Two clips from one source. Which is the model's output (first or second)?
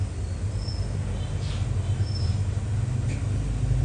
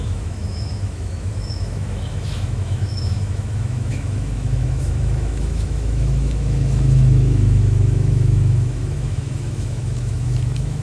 second